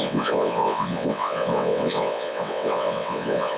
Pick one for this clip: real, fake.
fake